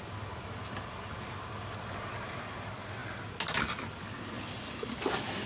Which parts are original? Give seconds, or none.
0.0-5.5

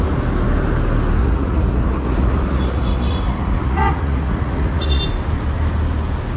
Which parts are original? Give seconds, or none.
0.0-1.2; 5.0-6.4